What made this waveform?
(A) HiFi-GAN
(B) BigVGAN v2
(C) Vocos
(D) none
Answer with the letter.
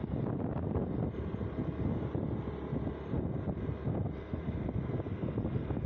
D